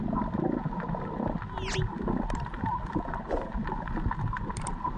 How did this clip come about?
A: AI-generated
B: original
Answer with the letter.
B